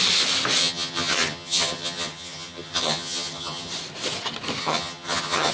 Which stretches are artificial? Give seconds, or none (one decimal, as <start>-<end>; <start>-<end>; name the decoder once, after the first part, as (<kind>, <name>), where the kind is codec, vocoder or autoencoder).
0.6-3.7 (vocoder, HiFi-GAN); 4.6-5.5